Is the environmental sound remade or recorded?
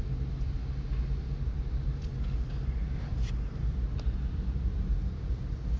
recorded